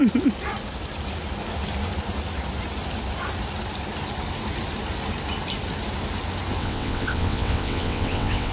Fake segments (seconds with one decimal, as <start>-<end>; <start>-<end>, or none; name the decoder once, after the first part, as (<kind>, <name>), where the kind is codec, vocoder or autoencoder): 6.6-8.5 (vocoder, WaveNeXt)